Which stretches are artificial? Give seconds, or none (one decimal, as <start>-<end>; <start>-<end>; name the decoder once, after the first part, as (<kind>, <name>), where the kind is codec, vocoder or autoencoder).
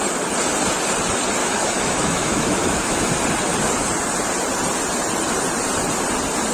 1.4-3.1 (autoencoder, DAC-VAE)